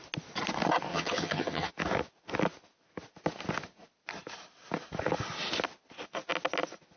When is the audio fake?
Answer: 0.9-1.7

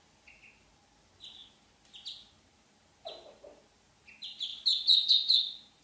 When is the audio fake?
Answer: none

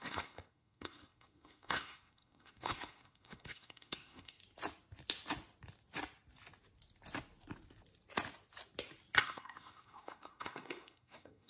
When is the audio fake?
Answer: 0.0-4.4; 9.2-11.5